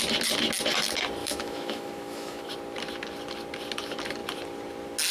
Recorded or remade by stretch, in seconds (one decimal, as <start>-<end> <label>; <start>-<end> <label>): 0.0-1.2 recorded; 1.2-2.5 remade; 2.5-5.1 recorded

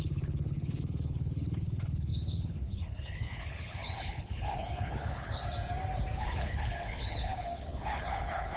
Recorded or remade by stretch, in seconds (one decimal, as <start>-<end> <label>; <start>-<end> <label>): 0.0-5.4 remade; 5.4-6.2 recorded; 6.2-8.6 remade

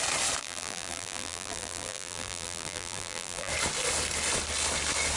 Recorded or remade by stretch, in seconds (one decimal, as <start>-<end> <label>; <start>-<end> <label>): 0.0-0.4 recorded; 0.4-3.5 remade; 3.5-5.2 recorded

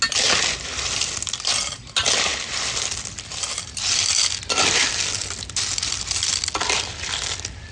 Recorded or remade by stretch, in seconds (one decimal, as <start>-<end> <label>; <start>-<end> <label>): 0.0-7.7 recorded